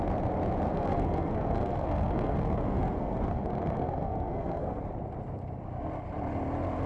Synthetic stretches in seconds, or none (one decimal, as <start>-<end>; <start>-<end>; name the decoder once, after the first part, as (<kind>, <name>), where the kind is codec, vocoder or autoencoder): 0.7-4.8 (codec, SNAC)